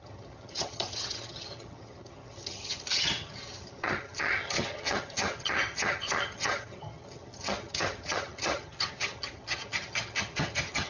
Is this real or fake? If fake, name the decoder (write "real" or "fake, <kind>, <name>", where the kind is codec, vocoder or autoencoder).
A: fake, vocoder, HiFi-GAN